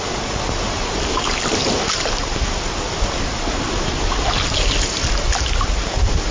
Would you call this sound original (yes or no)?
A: yes